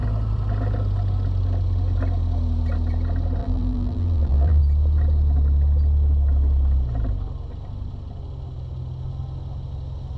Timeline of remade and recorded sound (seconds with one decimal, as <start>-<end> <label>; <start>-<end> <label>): 0.0-3.4 recorded; 3.4-4.6 remade; 4.6-10.2 recorded